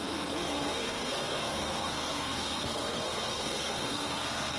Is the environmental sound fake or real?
fake